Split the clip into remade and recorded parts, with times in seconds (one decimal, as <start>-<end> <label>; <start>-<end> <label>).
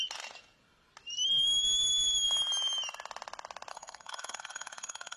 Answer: 0.0-3.7 recorded; 3.7-5.2 remade